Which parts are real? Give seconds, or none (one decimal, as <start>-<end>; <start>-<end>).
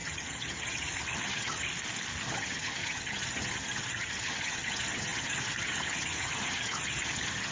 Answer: 1.7-2.2